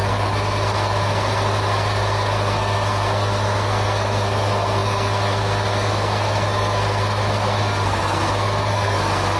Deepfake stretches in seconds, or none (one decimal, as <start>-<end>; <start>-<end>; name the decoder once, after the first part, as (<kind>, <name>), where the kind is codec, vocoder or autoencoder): 0.0-9.4 (codec, SNAC)